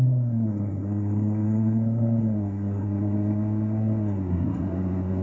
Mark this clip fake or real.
fake